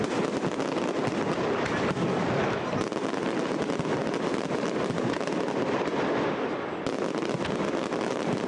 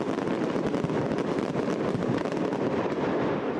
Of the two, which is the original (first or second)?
first